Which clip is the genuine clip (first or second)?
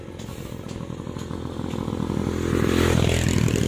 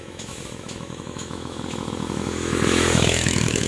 first